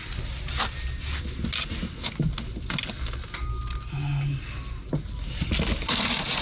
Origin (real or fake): real